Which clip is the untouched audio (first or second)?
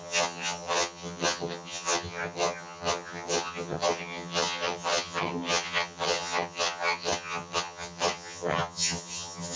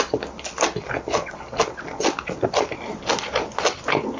second